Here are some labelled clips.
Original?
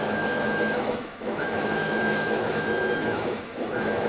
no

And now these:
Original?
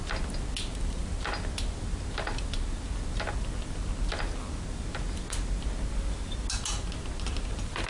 yes